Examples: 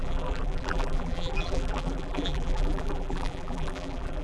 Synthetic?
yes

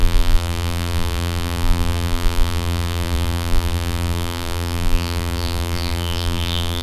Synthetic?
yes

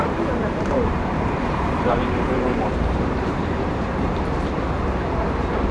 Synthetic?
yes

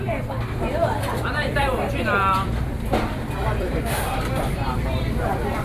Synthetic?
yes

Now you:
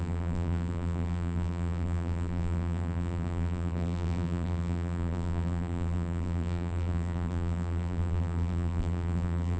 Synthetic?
yes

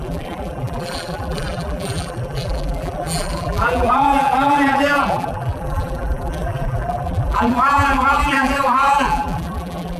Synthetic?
yes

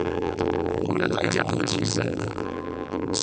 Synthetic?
yes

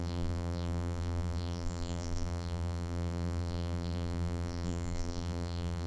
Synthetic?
yes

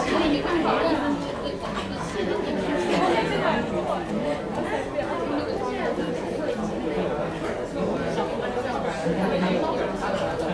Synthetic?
no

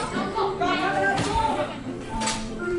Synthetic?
yes